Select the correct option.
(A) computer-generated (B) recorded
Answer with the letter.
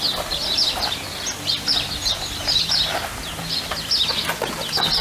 B